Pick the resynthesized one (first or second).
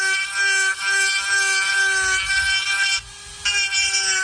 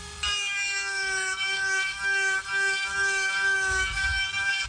second